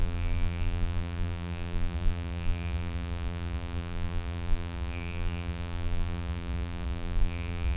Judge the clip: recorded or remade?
remade